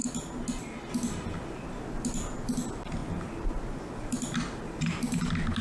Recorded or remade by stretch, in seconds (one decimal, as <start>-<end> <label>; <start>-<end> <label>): 0.0-5.6 recorded